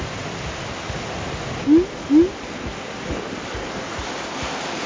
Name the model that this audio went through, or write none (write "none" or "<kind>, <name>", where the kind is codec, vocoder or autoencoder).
none